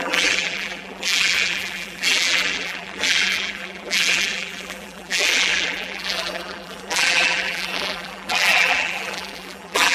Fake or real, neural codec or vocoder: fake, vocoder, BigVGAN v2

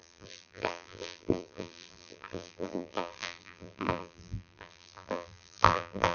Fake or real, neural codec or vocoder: fake, vocoder, BigVGAN v2